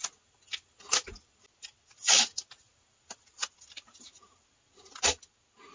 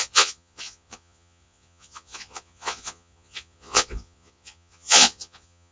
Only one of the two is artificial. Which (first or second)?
second